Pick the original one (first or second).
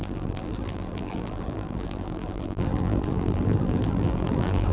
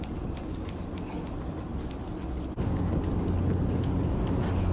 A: second